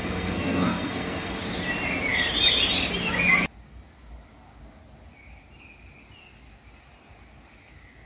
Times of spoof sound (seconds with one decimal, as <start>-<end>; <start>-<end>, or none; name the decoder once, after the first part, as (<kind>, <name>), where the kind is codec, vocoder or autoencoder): 0.0-1.4 (codec, SNAC)